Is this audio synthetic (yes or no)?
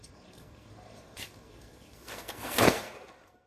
yes